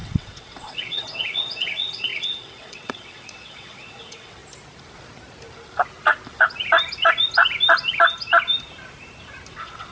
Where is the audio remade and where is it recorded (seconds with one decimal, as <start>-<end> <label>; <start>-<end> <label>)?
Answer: 0.0-4.4 remade; 4.4-9.5 recorded; 9.5-9.9 remade